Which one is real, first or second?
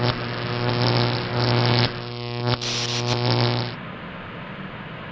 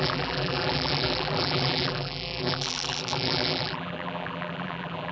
first